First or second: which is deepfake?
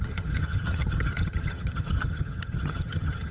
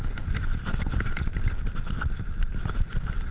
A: first